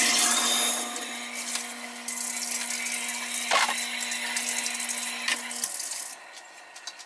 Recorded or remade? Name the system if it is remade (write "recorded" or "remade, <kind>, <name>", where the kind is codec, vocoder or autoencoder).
recorded